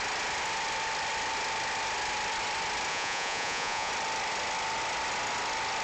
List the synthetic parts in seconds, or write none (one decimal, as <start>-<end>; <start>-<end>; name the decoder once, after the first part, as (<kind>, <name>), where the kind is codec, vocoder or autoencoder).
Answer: 2.9-3.9 (vocoder, Vocos)